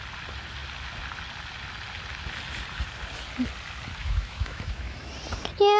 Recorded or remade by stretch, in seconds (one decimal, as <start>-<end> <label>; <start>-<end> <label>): 0.0-4.0 recorded; 4.0-5.1 remade; 5.1-5.8 recorded